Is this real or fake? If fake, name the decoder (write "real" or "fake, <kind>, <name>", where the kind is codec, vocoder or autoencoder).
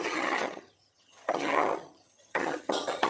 fake, vocoder, HiFi-GAN